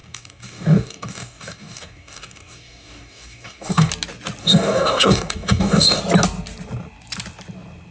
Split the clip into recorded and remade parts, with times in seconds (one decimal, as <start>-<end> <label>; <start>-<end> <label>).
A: 0.0-3.9 remade; 3.9-4.4 recorded; 4.4-6.0 remade; 6.0-7.9 recorded